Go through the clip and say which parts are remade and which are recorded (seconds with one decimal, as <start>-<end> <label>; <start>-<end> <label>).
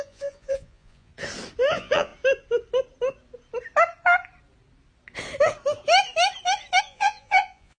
0.0-1.1 remade; 1.1-1.7 recorded; 1.7-2.1 remade; 2.1-6.8 recorded; 6.8-7.8 remade